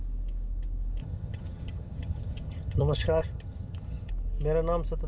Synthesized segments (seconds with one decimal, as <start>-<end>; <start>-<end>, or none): 1.0-4.1